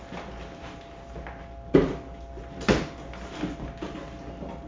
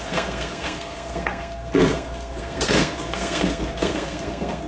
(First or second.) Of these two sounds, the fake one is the second